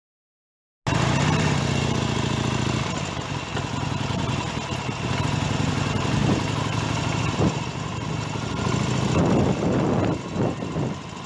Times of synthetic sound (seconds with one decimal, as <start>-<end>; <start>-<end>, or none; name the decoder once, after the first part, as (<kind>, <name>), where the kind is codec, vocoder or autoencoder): none